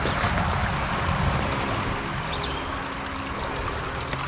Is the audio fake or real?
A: real